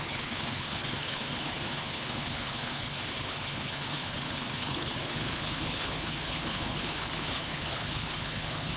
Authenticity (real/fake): fake